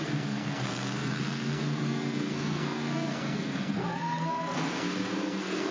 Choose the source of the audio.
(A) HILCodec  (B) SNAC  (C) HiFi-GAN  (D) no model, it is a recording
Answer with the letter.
B